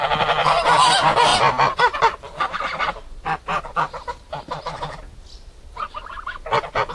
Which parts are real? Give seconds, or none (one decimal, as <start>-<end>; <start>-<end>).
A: 0.0-6.9